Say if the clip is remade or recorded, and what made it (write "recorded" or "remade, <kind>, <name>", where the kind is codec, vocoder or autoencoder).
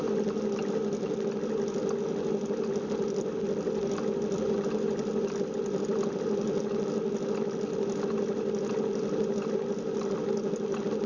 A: recorded